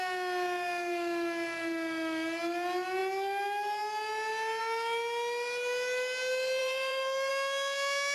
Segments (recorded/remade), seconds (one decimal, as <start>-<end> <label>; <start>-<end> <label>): 0.0-6.6 recorded; 6.6-7.3 remade; 7.3-8.1 recorded